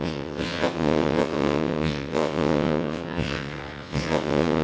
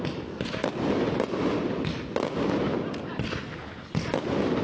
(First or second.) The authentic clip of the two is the second